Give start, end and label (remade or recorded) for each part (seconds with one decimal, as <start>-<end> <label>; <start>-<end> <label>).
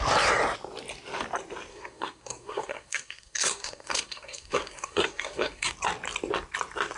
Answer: 0.0-1.7 recorded; 1.7-5.7 remade; 5.7-7.0 recorded